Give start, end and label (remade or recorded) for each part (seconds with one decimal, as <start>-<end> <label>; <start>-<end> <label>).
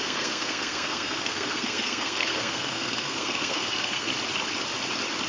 0.0-4.1 remade; 4.1-5.3 recorded